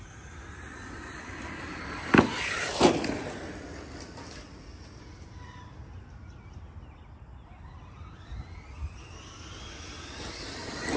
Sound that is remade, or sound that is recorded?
recorded